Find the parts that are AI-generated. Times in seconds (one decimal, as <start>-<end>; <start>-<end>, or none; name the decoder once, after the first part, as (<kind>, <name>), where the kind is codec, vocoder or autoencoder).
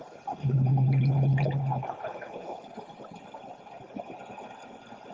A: 0.7-2.7 (codec, HILCodec)